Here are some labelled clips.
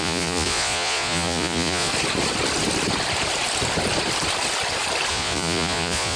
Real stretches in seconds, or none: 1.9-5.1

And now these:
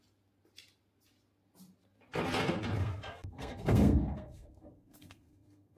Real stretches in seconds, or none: 0.0-2.8

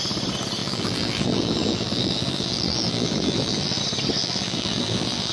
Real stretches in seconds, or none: 0.0-0.6; 3.8-4.2

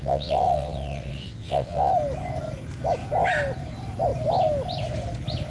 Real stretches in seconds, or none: 1.9-5.5

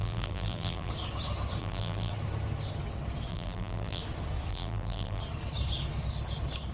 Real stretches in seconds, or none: 0.9-1.6; 2.1-3.3; 4.0-4.5; 5.2-6.7

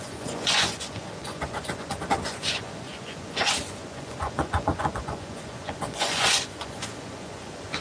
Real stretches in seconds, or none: none

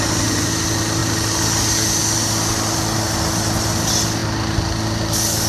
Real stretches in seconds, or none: 0.0-5.5